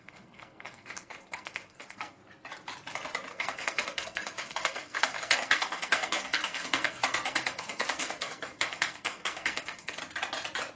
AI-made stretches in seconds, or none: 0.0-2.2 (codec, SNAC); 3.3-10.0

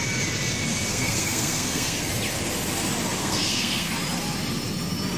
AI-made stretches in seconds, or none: 0.9-2.1 (codec, SNAC); 3.2-3.9